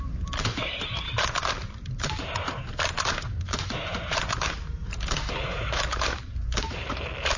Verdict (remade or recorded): remade